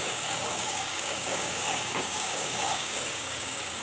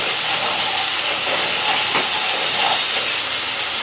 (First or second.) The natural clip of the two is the second